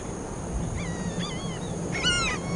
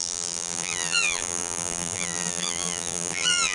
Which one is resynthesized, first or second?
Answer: second